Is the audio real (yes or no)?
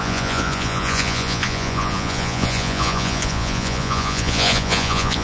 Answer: no